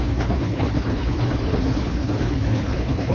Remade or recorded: remade